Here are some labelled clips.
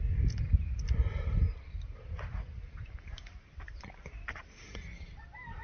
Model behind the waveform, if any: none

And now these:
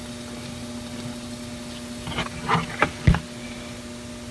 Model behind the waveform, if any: none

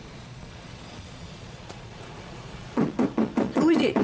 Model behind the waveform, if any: vocoder, Vocos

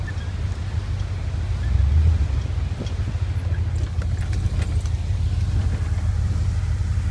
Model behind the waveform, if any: none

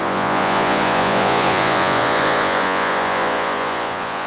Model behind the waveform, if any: vocoder, Vocos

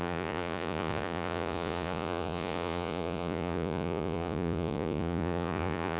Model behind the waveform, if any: vocoder, Vocos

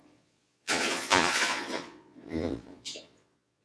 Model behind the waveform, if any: vocoder, Vocos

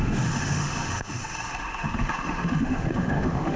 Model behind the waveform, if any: autoencoder, DAC-VAE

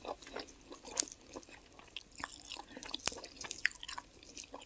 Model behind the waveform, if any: none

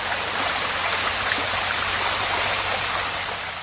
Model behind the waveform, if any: vocoder, BigVGAN v2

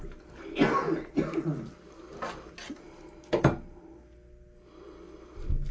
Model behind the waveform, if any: none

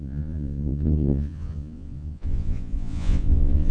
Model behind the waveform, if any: vocoder, Vocos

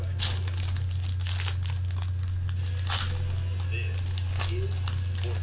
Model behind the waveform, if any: none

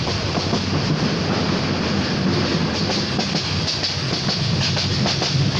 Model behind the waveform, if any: none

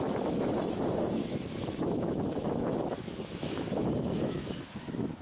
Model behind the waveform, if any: autoencoder, DAC-VAE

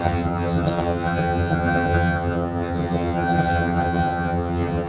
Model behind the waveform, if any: vocoder, HiFi-GAN